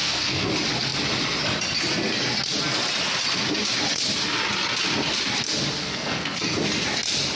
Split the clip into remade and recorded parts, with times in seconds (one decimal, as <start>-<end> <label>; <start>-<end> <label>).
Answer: 0.0-0.5 remade; 0.5-5.8 recorded; 5.8-6.4 remade; 6.4-7.4 recorded